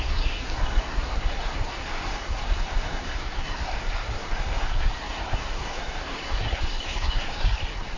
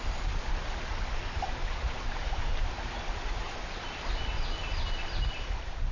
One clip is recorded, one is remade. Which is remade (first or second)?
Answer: first